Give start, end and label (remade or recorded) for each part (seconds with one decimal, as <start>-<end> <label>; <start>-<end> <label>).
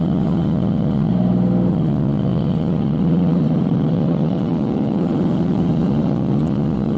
0.0-1.1 remade; 1.1-1.7 recorded; 1.7-7.0 remade